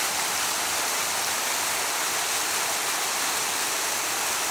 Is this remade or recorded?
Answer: recorded